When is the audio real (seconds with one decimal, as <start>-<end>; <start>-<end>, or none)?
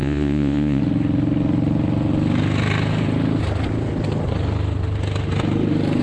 0.8-6.0